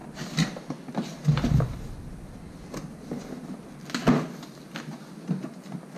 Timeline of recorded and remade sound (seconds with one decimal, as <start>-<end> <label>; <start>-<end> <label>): 0.0-6.0 recorded